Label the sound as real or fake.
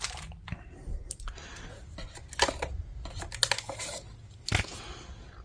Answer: real